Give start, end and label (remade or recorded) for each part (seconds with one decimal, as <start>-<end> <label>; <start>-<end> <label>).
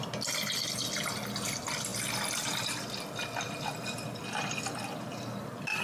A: 0.0-5.8 recorded